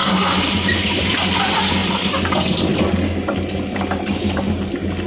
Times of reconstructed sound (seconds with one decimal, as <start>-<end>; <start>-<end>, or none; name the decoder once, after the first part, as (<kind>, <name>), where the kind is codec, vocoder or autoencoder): 0.0-1.4 (vocoder, BigVGAN v2)